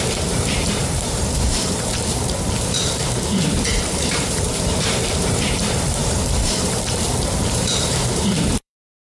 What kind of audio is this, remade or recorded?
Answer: remade